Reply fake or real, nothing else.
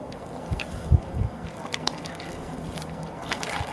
fake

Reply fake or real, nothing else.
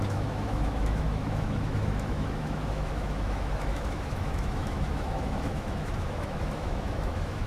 fake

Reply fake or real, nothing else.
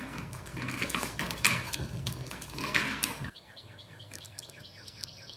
fake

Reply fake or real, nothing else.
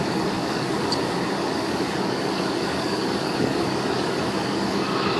fake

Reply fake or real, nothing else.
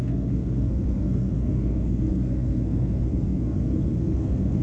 fake